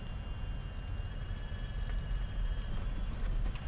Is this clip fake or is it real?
real